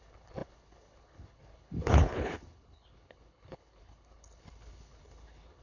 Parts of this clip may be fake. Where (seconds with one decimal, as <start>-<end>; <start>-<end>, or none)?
0.0-5.6